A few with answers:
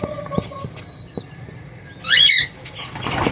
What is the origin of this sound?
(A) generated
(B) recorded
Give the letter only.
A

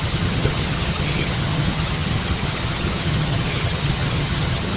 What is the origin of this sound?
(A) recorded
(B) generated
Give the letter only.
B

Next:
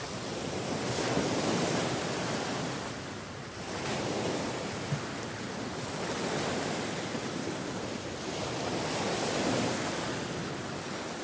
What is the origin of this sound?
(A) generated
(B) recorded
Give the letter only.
B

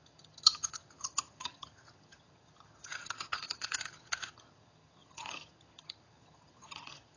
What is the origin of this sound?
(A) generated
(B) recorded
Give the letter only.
A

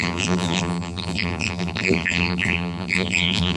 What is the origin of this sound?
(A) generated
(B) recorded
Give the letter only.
A